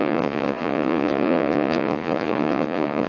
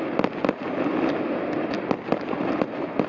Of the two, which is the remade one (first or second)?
first